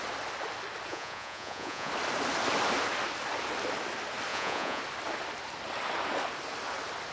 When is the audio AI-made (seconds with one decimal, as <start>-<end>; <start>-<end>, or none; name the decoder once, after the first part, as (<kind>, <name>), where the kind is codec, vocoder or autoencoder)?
0.9-1.9 (vocoder, Vocos); 4.3-4.8